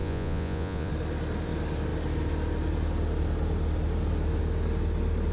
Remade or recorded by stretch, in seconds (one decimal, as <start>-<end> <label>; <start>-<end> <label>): 0.0-0.9 remade; 0.9-5.3 recorded